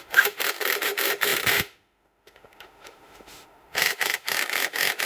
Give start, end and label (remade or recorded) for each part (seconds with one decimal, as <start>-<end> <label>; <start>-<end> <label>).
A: 0.0-5.1 remade